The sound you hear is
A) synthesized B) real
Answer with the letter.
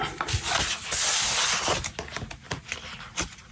B